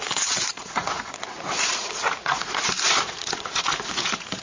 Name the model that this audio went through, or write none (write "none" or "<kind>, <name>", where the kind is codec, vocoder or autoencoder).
vocoder, Vocos